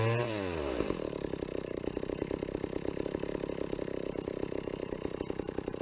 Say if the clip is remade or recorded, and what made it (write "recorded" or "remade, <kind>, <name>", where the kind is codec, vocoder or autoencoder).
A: remade, vocoder, BigVGAN v2